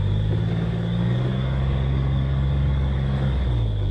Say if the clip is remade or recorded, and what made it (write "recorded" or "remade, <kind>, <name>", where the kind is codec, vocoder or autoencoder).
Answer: remade, codec, DAC